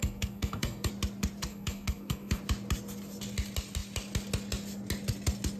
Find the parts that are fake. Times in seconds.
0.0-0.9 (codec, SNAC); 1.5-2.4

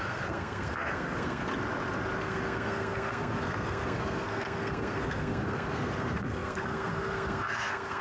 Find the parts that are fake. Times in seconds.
0.0-1.5 (codec, SNAC); 2.2-8.0

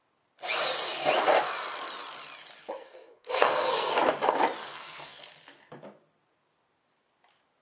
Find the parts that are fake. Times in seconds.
2.6-3.9 (codec, SNAC); 4.6-5.2